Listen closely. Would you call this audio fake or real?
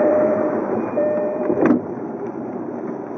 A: fake